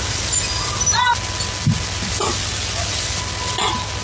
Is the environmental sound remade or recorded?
recorded